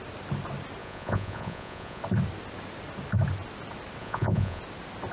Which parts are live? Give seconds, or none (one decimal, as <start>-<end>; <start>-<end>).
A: 0.0-0.8; 2.0-4.0; 4.6-5.1